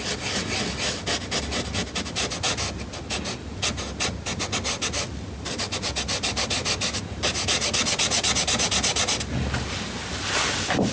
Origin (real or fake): real